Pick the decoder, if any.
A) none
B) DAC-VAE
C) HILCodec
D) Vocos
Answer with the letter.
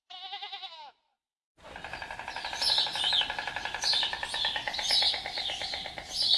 A